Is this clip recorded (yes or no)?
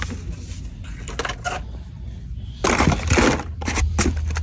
yes